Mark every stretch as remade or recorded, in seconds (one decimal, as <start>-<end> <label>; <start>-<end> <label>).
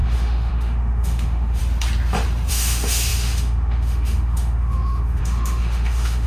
0.0-1.6 remade; 1.6-2.5 recorded; 2.5-6.3 remade